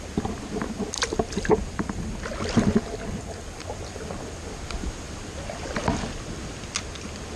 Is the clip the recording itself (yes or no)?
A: yes